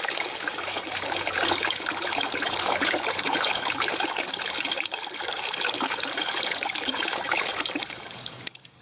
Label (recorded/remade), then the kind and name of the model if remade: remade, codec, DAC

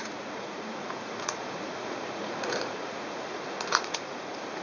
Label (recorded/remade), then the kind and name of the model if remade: remade, vocoder, Vocos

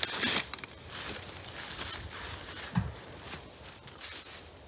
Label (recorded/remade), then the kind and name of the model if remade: recorded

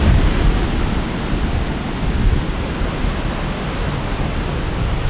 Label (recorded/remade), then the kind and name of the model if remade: recorded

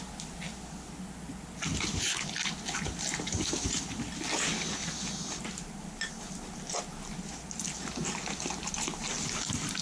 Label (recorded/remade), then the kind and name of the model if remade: recorded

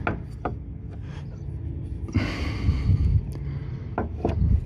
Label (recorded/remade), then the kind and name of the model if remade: recorded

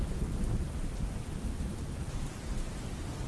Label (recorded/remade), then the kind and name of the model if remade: recorded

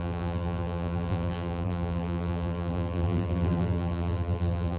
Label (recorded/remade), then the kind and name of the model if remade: remade, vocoder, BigVGAN v2